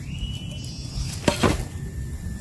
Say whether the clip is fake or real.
real